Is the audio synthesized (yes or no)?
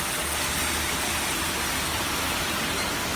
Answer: no